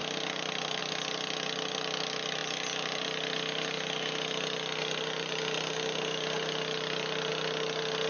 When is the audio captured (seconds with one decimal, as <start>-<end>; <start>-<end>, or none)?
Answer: 0.0-8.1